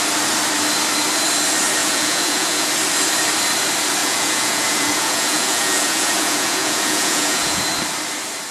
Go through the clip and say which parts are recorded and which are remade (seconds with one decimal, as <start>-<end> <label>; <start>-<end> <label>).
0.0-1.8 recorded; 1.8-2.7 remade; 2.7-4.0 recorded; 4.0-7.6 remade; 7.6-8.5 recorded